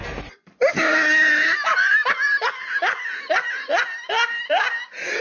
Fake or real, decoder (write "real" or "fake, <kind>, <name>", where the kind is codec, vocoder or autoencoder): real